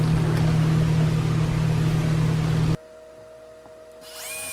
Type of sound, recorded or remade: recorded